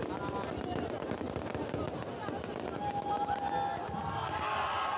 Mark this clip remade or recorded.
recorded